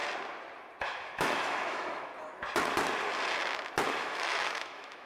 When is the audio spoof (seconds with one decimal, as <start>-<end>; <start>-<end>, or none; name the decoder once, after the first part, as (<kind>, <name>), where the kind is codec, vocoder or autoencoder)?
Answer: 0.8-2.1 (autoencoder, DAC-VAE); 4.1-5.1

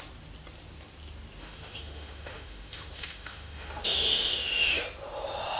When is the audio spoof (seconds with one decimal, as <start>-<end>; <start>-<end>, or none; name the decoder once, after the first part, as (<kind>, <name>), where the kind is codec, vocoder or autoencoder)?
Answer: 1.4-4.8 (autoencoder, DAC-VAE)

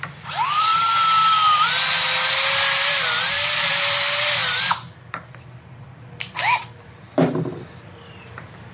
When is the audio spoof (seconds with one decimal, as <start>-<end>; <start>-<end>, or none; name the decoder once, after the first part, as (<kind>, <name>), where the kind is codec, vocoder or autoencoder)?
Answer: 0.0-0.7 (vocoder, BigVGAN v2); 2.9-8.7

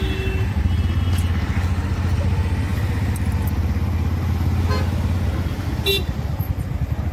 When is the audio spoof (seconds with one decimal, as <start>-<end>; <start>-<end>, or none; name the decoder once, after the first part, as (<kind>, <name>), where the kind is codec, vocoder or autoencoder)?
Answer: none

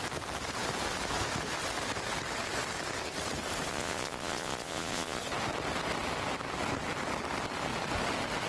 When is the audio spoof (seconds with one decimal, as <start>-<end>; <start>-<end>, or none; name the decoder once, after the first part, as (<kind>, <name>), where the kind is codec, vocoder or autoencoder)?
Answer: 3.7-5.2 (vocoder, Vocos)

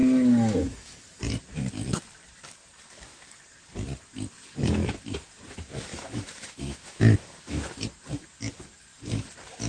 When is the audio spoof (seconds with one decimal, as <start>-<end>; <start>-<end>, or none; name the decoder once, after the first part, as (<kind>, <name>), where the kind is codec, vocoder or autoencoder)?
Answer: 0.0-1.2 (autoencoder, DAC-VAE); 6.0-7.7